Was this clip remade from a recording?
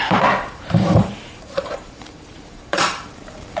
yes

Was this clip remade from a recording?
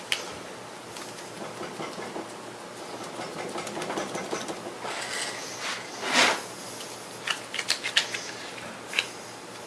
no